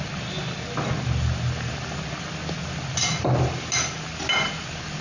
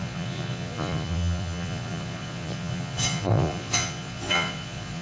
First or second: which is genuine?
first